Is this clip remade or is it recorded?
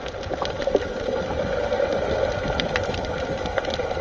remade